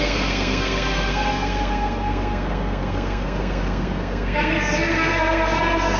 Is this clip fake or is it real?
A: fake